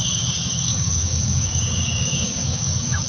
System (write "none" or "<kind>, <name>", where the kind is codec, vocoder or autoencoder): codec, DAC